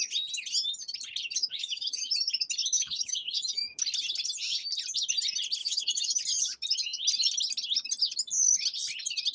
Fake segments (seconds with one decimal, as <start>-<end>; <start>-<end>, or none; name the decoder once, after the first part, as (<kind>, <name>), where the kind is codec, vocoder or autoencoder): 1.4-2.0 (autoencoder, DAC-VAE); 2.6-3.8; 5.6-6.2